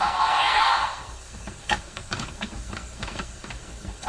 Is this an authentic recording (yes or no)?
no